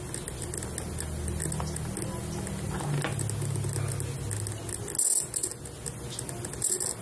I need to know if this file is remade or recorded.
recorded